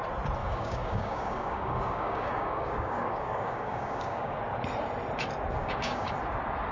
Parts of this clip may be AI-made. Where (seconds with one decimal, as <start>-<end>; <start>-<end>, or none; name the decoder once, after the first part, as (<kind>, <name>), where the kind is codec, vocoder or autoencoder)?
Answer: 0.4-4.4 (codec, DAC); 5.6-6.1